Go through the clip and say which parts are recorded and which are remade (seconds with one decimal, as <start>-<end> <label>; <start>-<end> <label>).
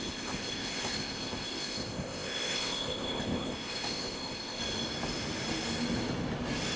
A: 0.0-4.6 remade; 4.6-6.8 recorded